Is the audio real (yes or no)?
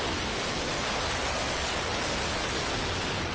yes